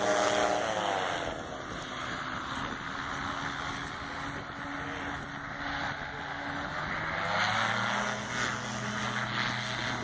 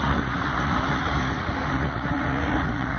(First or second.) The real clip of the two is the first